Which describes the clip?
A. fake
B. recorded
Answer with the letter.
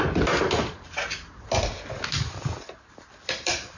B